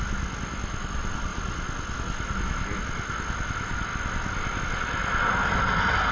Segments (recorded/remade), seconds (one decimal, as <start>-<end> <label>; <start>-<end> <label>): 0.0-6.1 recorded